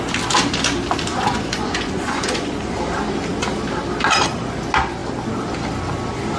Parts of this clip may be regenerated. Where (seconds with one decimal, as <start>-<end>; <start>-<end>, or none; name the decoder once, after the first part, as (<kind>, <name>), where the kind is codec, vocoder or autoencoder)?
1.1-2.8 (vocoder, Vocos)